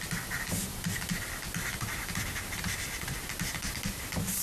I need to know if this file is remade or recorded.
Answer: remade